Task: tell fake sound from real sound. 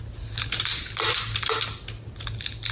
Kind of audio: real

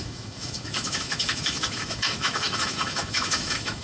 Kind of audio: fake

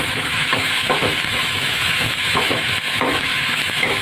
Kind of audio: fake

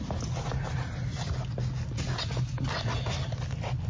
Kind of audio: real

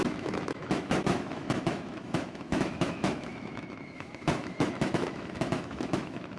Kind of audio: fake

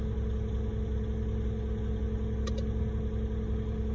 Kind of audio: real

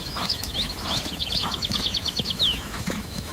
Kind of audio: fake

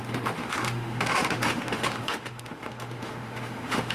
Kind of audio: fake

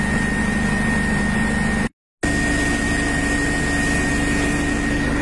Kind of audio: real